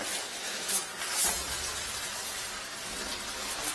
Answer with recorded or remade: recorded